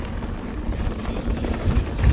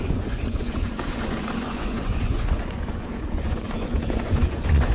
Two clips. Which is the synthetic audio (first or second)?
second